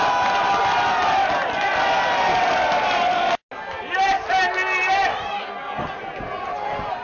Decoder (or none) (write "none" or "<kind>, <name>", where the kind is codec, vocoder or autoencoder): none